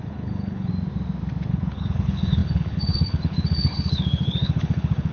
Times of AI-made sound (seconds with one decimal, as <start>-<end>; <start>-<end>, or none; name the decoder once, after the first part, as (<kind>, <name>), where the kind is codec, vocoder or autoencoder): 0.0-0.7 (codec, HILCodec); 1.5-5.1